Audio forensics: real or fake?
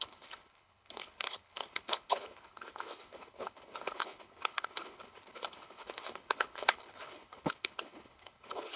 fake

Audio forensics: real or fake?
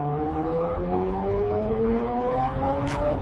fake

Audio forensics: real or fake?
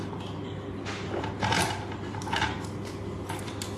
real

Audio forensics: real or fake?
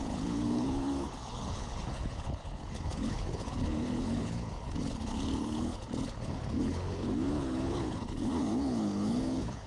fake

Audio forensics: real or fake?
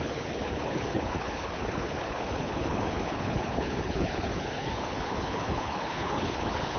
fake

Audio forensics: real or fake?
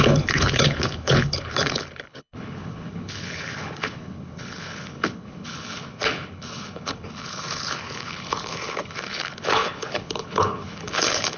fake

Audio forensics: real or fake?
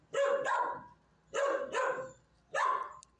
real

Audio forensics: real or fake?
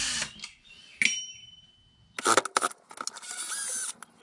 real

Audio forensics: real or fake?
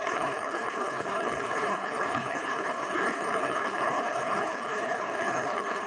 fake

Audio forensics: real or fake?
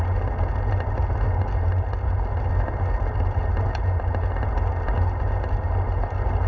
real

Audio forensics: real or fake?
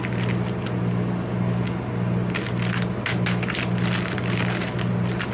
real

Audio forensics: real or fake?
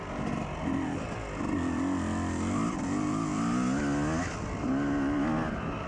real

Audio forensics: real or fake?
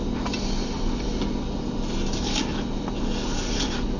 real